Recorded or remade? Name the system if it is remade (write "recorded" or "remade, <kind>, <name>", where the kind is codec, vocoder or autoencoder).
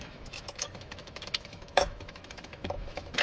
remade, autoencoder, DAC-VAE